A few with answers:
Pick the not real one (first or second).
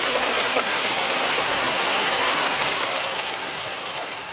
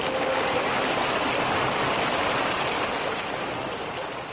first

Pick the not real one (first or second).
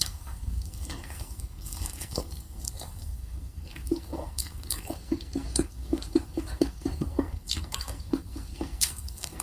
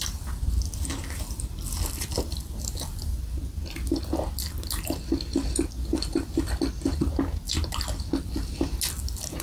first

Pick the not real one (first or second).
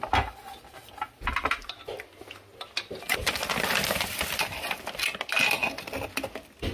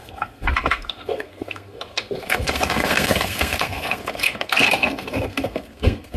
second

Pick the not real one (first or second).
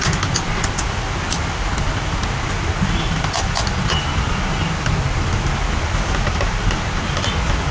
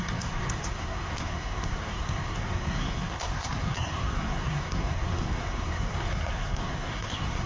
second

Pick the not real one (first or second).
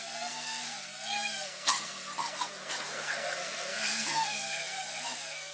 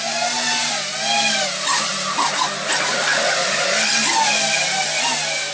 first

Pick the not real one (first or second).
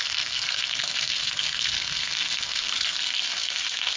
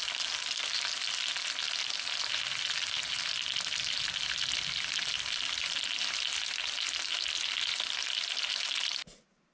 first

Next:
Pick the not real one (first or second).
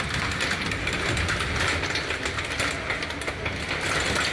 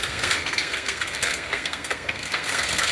second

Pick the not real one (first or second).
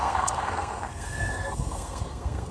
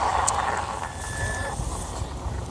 first